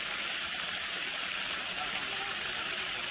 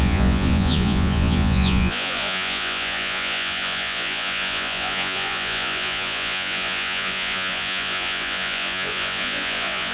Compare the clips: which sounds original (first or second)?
first